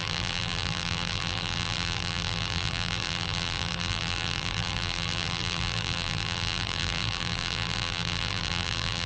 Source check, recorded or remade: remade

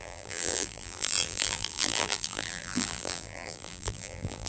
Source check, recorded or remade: remade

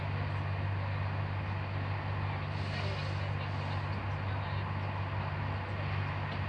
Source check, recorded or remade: recorded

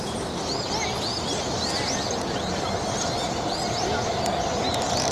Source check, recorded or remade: recorded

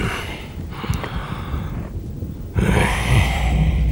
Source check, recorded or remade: remade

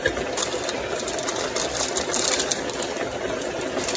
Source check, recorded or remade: remade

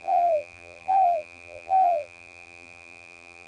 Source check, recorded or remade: remade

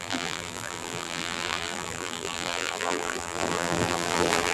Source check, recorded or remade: remade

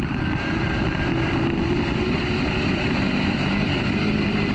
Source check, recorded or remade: recorded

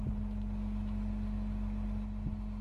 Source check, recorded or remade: recorded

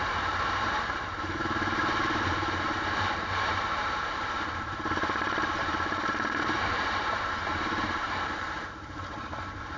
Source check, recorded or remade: remade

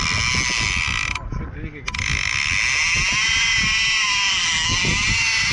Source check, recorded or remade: recorded